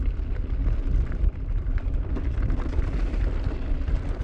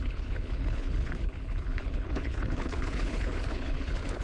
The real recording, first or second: first